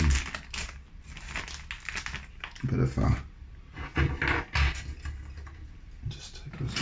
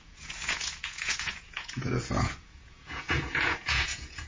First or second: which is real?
first